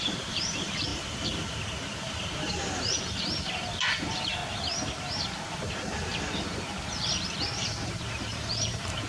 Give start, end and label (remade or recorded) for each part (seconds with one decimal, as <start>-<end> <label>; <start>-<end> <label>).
0.0-0.9 remade; 0.9-4.0 recorded; 4.0-4.4 remade; 4.4-5.1 recorded; 5.1-6.1 remade; 6.1-7.4 recorded; 7.4-9.1 remade